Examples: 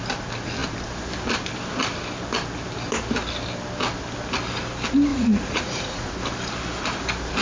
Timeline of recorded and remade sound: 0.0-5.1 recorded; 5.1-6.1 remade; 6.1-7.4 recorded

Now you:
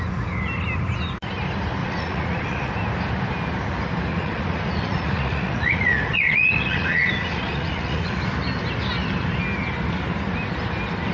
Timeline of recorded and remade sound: 0.0-1.8 recorded; 1.8-2.7 remade; 2.7-4.1 recorded; 4.1-8.2 remade; 8.2-11.1 recorded

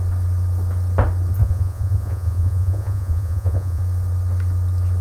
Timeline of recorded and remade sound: 0.0-1.4 recorded; 1.4-3.8 remade; 3.8-5.0 recorded

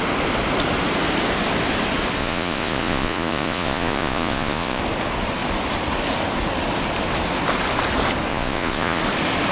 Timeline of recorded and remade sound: 0.0-2.2 recorded; 2.2-4.8 remade; 4.8-8.3 recorded; 8.3-9.0 remade; 9.0-9.5 recorded

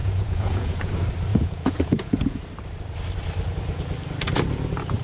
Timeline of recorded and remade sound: 0.0-0.9 remade; 0.9-1.3 recorded; 1.3-2.4 remade; 2.4-5.0 recorded

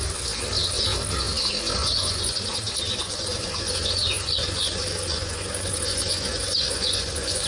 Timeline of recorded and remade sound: 0.0-1.8 recorded; 1.8-2.5 remade; 2.5-3.0 recorded; 3.0-7.5 remade

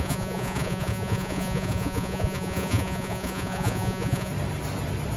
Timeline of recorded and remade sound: 0.0-4.3 remade; 4.3-5.2 recorded

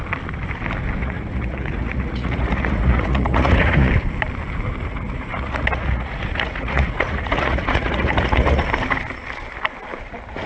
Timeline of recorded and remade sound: 0.0-1.0 recorded; 1.0-3.9 remade; 3.9-4.8 recorded; 4.8-8.6 remade; 8.6-10.5 recorded